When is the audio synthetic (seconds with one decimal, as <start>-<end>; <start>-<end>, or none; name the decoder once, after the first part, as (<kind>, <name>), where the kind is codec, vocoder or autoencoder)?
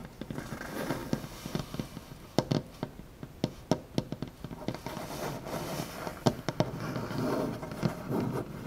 0.5-1.0 (vocoder, BigVGAN v2); 5.5-6.1; 7.8-8.7